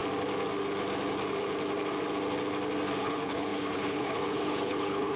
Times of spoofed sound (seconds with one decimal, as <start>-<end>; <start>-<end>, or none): 3.0-5.2